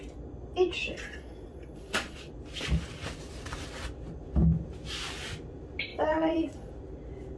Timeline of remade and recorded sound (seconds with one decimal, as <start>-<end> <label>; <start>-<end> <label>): 0.0-0.8 recorded; 0.8-2.3 remade; 2.3-5.9 recorded; 5.9-6.7 remade; 6.7-7.4 recorded